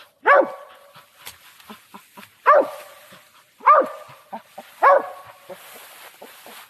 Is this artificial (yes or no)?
no